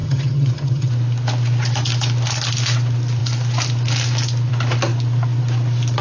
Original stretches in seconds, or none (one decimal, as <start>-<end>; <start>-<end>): 0.9-6.0